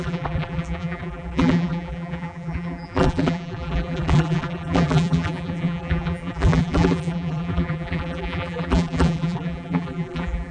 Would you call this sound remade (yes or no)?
yes